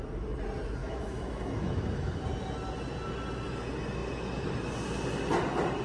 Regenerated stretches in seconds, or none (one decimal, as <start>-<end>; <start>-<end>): 0.8-2.2